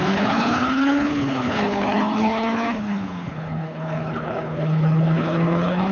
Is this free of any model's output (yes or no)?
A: no